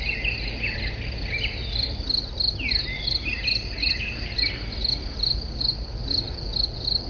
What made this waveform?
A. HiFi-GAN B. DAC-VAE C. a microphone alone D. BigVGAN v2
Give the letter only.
C